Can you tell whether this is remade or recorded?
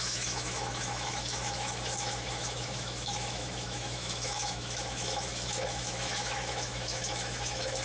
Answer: remade